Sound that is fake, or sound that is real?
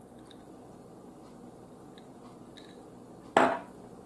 real